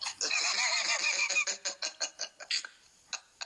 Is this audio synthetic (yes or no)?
no